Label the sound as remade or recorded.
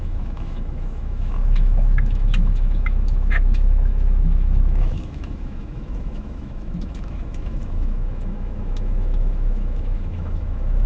remade